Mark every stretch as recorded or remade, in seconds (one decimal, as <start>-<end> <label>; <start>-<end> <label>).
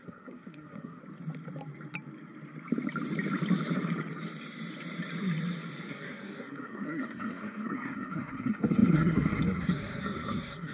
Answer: 0.0-1.0 remade; 1.0-5.9 recorded; 5.9-10.7 remade